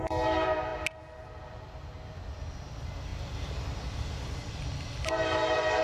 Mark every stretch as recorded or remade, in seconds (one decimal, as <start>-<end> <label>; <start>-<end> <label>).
0.0-5.8 recorded